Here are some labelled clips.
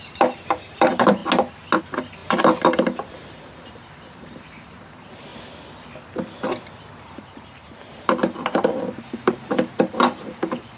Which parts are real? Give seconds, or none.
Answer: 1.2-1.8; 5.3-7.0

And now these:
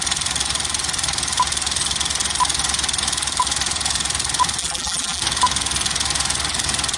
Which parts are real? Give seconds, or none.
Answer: 0.0-4.6; 5.2-7.0

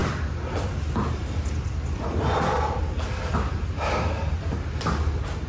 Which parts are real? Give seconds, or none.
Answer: 0.0-5.5

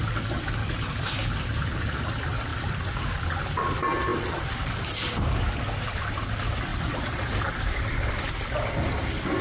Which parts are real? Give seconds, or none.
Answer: 0.0-2.5; 3.2-6.7; 8.1-9.4

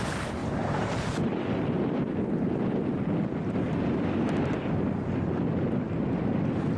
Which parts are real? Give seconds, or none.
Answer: 0.0-6.8